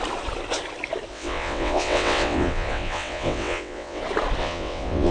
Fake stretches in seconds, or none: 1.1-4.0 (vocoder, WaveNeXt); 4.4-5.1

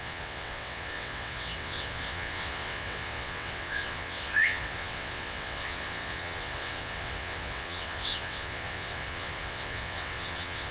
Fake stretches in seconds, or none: 0.0-10.7 (vocoder, WaveNeXt)

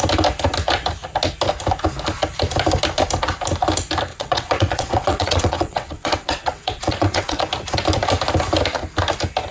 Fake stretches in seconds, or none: 4.1-7.4 (vocoder, WaveNeXt)